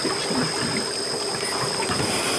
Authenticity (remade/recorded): recorded